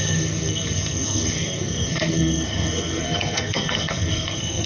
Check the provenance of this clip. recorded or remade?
remade